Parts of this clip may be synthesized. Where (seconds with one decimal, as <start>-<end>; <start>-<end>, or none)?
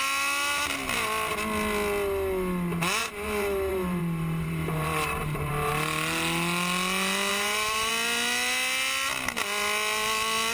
3.0-5.7; 7.3-7.9